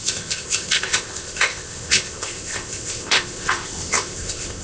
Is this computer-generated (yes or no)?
yes